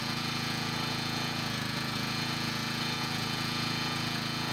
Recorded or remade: remade